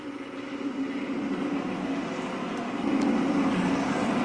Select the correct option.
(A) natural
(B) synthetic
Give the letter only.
A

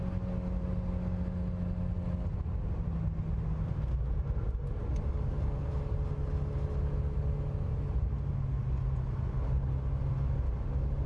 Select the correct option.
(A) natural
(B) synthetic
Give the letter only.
A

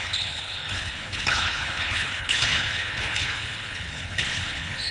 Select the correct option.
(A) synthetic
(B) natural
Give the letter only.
A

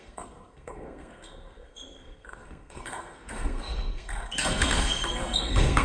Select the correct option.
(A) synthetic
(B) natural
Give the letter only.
A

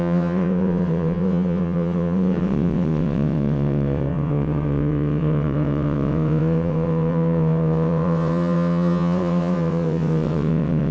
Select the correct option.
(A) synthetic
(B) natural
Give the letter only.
A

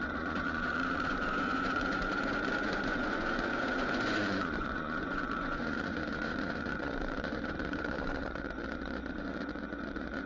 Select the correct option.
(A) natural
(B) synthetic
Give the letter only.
B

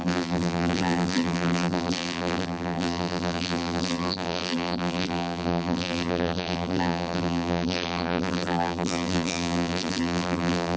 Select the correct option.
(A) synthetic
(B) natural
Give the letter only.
A